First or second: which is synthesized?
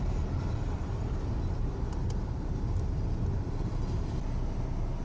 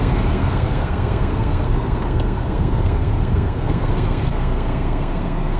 second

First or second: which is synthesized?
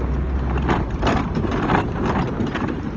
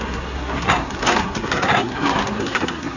second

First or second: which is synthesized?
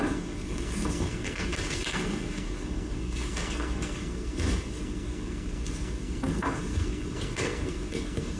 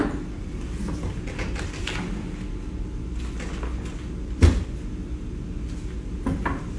first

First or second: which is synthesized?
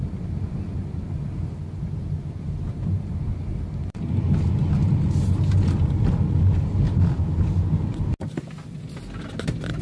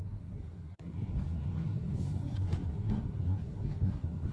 second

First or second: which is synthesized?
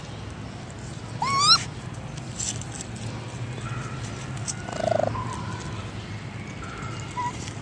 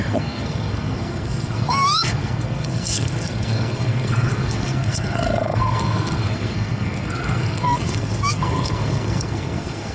second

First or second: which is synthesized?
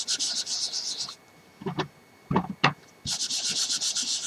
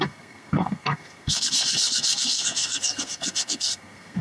second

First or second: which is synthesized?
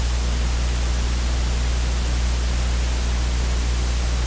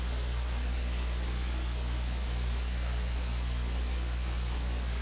second